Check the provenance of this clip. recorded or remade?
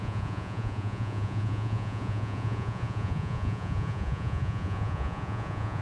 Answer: remade